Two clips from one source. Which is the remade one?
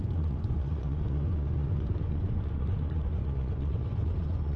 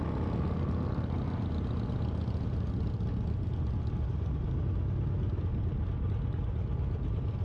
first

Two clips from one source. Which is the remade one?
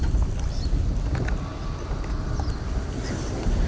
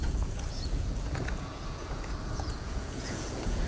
second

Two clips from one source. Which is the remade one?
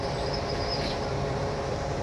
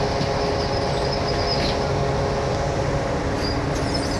first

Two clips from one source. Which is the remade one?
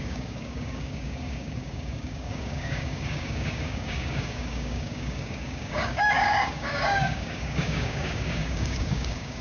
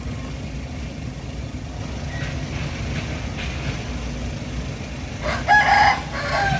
first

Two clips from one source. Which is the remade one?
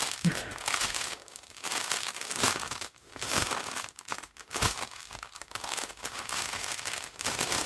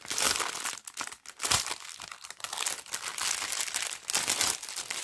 first